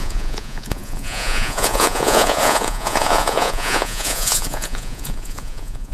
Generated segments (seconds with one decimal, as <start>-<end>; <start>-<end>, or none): 0.0-5.9